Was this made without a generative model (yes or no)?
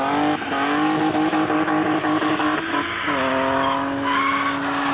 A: yes